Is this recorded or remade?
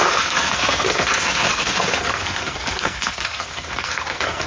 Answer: remade